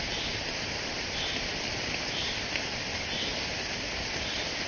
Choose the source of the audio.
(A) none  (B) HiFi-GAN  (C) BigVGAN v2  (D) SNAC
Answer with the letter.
A